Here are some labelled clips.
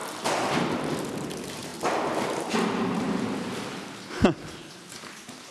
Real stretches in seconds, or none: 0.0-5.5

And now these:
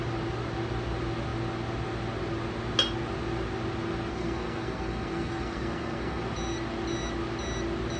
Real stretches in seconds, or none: 0.0-4.1; 6.2-8.0

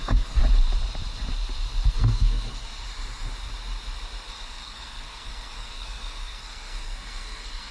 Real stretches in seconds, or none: 0.4-1.9; 2.8-4.3

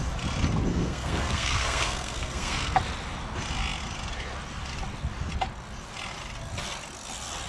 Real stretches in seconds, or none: 0.0-0.7; 2.8-7.5

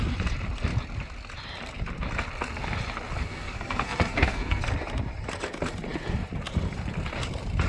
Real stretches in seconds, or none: 0.0-3.2; 4.6-7.7

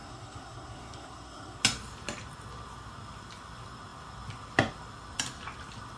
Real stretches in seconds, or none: 1.6-6.0

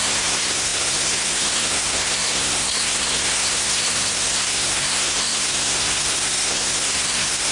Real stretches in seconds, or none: none

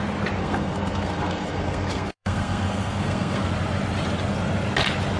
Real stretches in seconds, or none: 0.0-0.4; 3.5-5.2